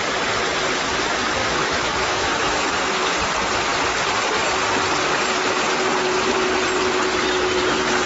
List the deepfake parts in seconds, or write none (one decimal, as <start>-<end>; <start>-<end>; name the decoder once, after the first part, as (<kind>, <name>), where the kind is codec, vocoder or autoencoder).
1.4-2.7 (autoencoder, DAC-VAE)